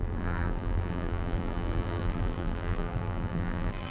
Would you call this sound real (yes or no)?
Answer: no